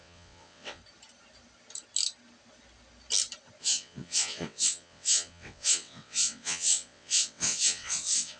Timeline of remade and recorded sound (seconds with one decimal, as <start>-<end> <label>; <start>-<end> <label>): 0.0-0.8 remade; 0.8-3.6 recorded; 3.6-8.4 remade